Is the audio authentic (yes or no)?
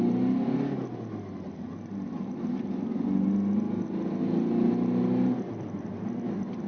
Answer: yes